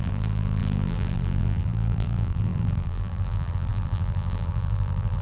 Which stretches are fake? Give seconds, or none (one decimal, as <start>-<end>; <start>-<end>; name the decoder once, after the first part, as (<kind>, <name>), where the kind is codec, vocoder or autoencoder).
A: 0.0-5.2 (vocoder, BigVGAN v2)

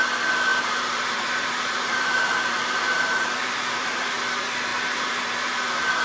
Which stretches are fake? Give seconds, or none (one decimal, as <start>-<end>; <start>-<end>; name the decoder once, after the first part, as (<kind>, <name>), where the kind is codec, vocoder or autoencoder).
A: 0.5-4.1 (vocoder, BigVGAN v2); 4.7-5.3

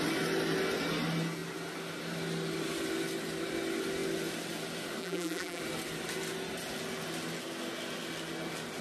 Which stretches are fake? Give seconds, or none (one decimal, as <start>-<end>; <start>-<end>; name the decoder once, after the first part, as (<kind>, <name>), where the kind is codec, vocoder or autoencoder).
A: 5.0-5.6 (vocoder, BigVGAN v2)

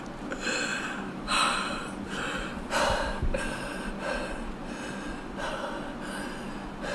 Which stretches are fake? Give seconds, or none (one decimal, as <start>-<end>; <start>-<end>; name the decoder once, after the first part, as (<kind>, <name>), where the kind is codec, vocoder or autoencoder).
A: 0.7-4.3 (vocoder, BigVGAN v2)

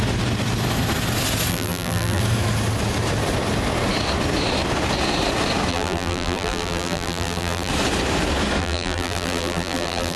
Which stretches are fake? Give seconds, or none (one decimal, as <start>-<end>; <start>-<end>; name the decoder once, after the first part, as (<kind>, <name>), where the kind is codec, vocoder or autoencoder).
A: 1.5-2.2 (vocoder, BigVGAN v2); 5.7-7.7; 8.6-10.2